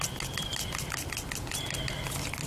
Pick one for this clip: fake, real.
real